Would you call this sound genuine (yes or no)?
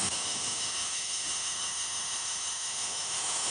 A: no